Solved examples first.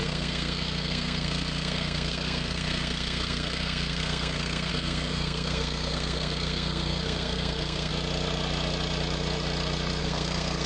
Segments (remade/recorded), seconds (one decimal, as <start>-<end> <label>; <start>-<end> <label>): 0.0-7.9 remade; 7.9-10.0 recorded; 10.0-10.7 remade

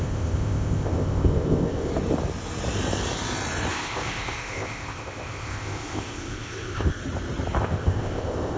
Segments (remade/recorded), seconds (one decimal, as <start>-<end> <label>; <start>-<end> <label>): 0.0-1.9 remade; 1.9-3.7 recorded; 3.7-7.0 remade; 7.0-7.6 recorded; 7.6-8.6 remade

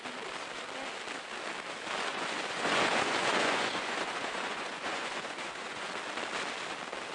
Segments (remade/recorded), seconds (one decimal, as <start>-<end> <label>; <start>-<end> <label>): 0.0-2.1 recorded; 2.1-5.9 remade; 5.9-7.1 recorded